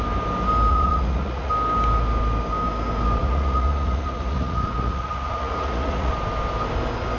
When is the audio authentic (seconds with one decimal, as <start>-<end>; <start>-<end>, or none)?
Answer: 0.0-0.7; 1.5-3.2; 6.1-7.2